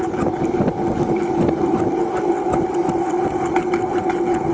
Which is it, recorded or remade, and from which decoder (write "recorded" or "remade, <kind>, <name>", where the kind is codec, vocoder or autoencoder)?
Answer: recorded